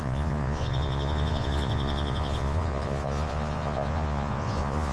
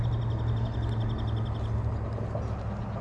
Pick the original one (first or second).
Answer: second